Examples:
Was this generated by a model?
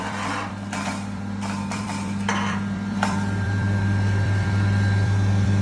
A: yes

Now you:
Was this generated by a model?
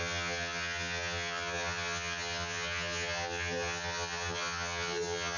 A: yes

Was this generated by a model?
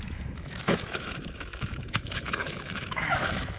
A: yes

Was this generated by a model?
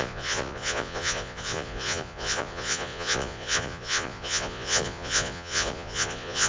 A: yes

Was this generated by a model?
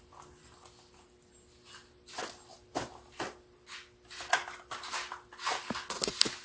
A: no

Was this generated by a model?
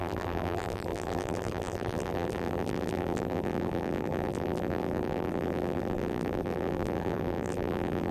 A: yes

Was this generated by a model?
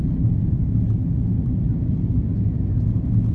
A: no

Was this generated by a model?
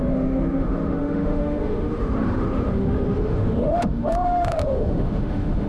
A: yes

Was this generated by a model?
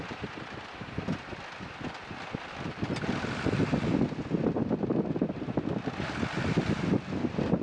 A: no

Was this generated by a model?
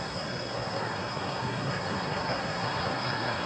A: yes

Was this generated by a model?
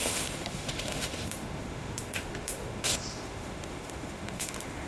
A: yes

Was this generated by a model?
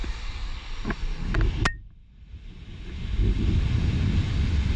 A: no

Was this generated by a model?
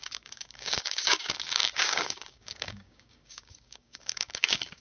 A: yes